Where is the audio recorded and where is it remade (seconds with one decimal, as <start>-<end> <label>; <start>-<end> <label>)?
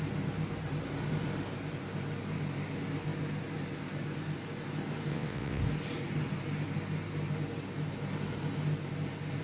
0.0-5.1 recorded; 5.1-5.6 remade; 5.6-9.4 recorded